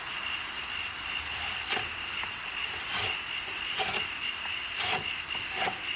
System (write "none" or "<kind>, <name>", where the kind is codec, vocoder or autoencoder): none